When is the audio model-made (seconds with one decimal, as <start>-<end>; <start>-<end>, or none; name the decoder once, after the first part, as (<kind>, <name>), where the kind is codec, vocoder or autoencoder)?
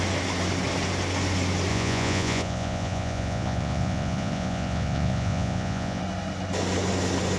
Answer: 1.7-6.0 (vocoder, Vocos)